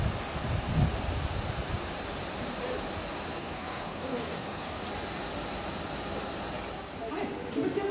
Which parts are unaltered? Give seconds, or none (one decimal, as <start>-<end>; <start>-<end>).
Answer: 0.0-3.4; 4.9-7.9